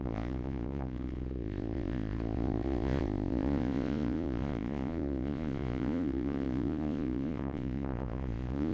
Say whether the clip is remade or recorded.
remade